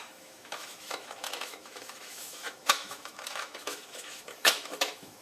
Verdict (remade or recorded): remade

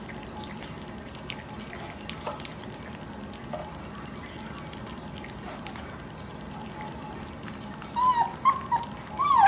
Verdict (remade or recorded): recorded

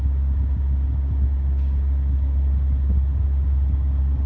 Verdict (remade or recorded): recorded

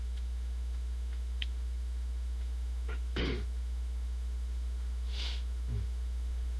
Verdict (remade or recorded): remade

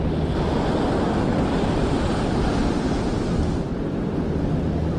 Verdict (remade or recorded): recorded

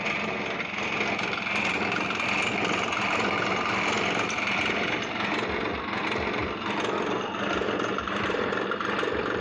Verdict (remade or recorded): recorded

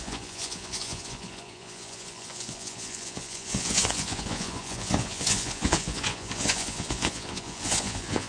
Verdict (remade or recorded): remade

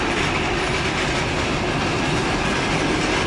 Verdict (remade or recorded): recorded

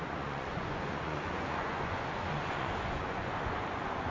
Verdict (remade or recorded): remade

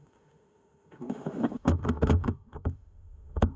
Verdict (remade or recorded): remade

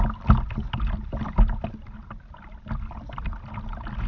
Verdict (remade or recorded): recorded